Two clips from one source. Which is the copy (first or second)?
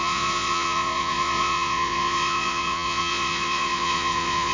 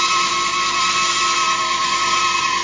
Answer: first